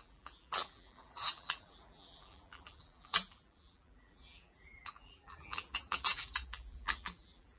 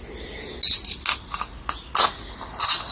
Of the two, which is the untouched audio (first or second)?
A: second